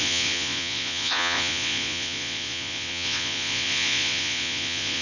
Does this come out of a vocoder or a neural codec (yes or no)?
yes